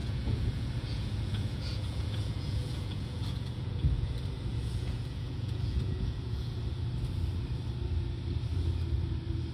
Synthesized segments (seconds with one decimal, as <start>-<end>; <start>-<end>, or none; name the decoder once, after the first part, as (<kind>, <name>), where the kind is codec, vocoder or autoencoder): 0.0-4.1 (vocoder, Vocos); 4.5-6.6

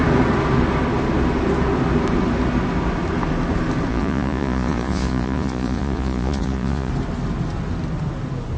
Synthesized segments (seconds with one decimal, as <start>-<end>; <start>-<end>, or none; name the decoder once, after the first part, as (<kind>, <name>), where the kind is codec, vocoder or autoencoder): 3.9-6.9 (vocoder, Vocos)

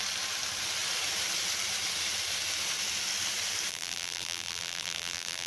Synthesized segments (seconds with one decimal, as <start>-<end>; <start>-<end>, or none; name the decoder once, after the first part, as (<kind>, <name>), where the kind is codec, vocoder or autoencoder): 3.7-5.5 (vocoder, BigVGAN v2)

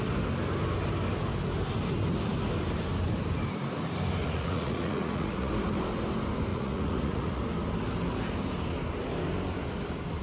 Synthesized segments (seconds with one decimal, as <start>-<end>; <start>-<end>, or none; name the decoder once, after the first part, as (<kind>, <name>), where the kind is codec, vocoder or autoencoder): 4.2-5.5 (vocoder, Vocos); 6.5-7.4

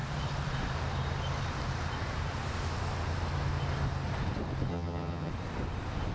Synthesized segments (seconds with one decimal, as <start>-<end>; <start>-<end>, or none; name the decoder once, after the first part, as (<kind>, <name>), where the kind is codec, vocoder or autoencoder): 4.7-5.3 (vocoder, HiFi-GAN)